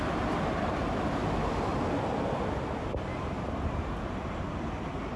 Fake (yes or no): no